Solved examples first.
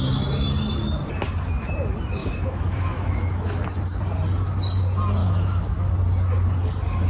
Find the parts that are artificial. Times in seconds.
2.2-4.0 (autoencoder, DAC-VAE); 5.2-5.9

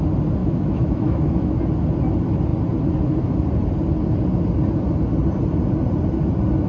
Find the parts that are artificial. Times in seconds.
0.4-1.6 (autoencoder, DAC-VAE)

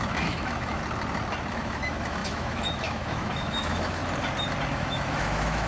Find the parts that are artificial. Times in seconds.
0.0-0.8 (autoencoder, DAC-VAE); 1.5-4.0; 4.7-5.7